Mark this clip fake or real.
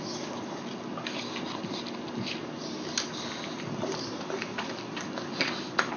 real